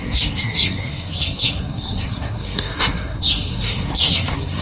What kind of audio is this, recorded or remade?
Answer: remade